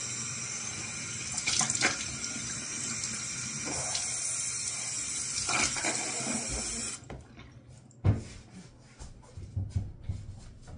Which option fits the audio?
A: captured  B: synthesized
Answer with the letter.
A